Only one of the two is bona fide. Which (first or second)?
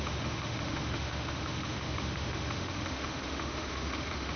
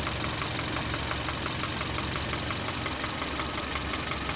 second